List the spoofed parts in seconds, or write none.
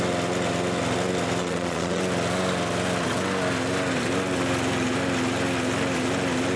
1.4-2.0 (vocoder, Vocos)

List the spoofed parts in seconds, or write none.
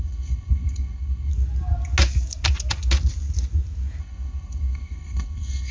0.0-1.3 (codec, SNAC); 4.0-5.7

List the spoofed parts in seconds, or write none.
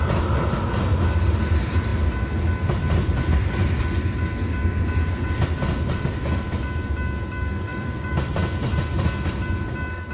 7.7-8.3 (vocoder, BigVGAN v2)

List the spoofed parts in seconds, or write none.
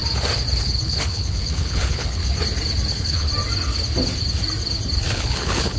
0.6-2.2 (codec, HILCodec); 2.9-3.3; 5.1-5.8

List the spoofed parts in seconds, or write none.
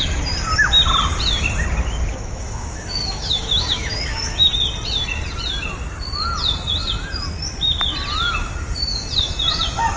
2.1-4.5 (autoencoder, DAC-VAE)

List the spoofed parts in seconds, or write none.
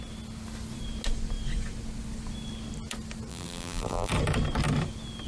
3.3-4.1 (vocoder, BigVGAN v2)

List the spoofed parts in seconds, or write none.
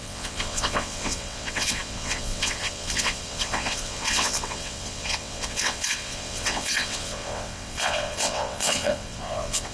0.0-9.7 (vocoder, WaveNeXt)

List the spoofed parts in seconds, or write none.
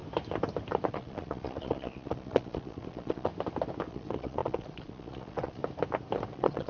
0.9-3.3 (vocoder, Vocos); 3.9-5.6; 6.3-6.7